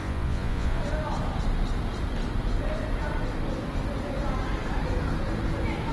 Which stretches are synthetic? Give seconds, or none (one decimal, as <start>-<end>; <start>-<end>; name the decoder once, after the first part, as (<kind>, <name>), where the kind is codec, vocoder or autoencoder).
0.0-0.8 (vocoder, Vocos)